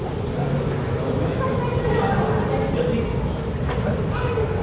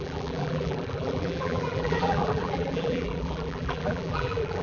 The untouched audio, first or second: first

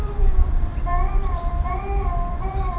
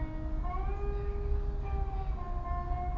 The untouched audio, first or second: second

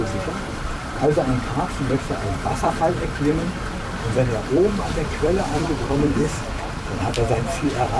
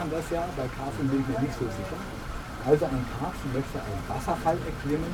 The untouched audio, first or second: second